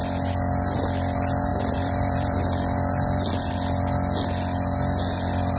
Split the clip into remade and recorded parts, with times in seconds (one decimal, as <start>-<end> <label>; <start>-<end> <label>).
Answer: 0.0-1.5 recorded; 1.5-2.4 remade; 2.4-5.6 recorded